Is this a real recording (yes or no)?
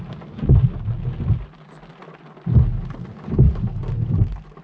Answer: yes